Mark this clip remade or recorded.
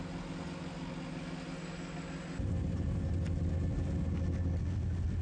recorded